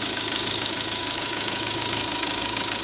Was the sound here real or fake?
fake